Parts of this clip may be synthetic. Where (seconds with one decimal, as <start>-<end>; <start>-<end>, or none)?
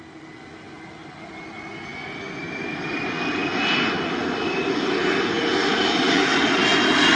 none